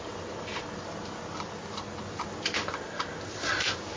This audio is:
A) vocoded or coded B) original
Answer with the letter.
B